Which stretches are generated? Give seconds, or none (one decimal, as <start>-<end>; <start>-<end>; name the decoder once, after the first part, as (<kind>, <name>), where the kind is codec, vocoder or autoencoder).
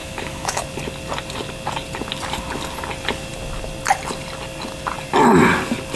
0.0-0.6 (autoencoder, DAC-VAE)